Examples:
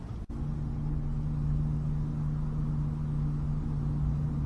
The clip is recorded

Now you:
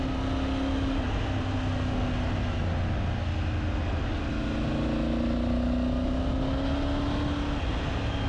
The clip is recorded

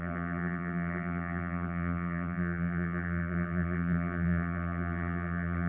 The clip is remade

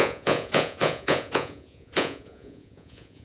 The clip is remade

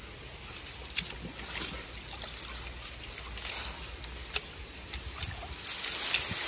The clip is recorded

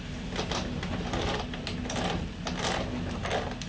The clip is recorded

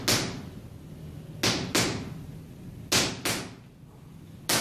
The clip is recorded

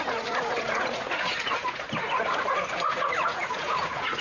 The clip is remade